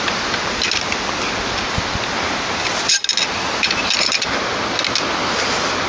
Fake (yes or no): no